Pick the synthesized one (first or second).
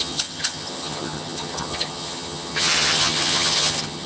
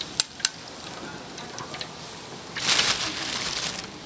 first